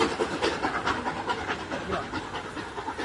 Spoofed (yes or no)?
no